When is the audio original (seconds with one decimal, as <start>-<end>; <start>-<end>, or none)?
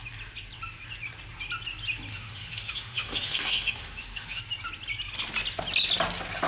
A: 0.0-2.1; 4.4-6.5